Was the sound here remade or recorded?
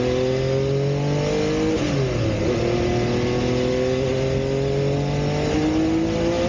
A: recorded